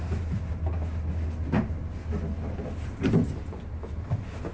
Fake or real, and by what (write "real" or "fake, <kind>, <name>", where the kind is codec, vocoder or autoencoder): real